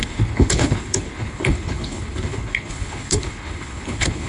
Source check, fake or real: fake